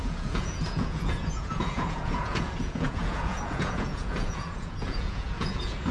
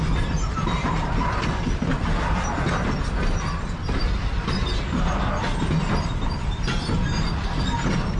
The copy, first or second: first